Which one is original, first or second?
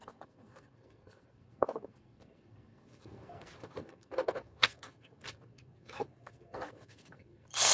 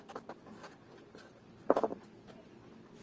second